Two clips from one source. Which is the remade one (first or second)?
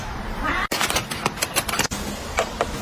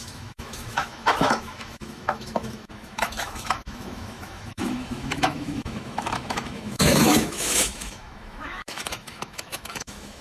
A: second